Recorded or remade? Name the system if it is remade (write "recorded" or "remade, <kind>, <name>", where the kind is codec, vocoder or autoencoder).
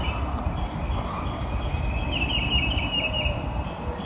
recorded